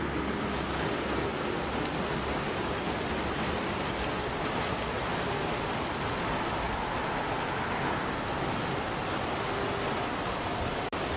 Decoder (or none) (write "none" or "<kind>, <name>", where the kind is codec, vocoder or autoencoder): none